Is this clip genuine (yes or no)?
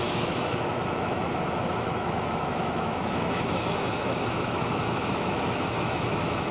no